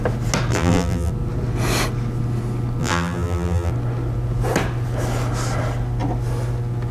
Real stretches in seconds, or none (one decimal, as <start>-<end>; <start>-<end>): 0.0-0.5; 1.1-2.8; 3.7-6.9